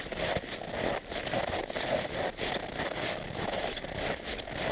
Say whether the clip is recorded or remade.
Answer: recorded